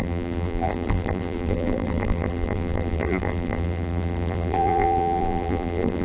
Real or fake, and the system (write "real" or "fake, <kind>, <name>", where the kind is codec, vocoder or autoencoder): fake, vocoder, BigVGAN v2